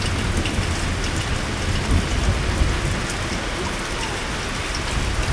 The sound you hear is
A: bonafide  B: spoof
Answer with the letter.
A